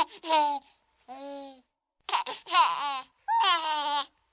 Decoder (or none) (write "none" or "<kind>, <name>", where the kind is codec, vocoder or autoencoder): none